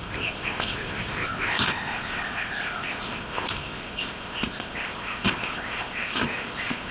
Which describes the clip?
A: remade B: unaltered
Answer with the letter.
A